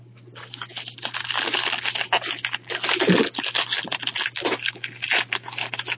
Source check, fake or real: real